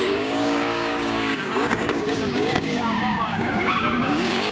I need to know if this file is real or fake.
fake